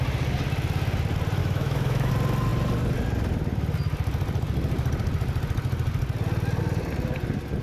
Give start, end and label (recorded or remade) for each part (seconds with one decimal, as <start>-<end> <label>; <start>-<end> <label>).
0.0-1.4 recorded; 1.4-2.1 remade; 2.1-7.6 recorded